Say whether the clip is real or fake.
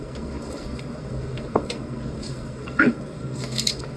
fake